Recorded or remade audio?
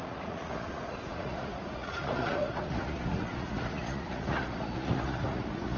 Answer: remade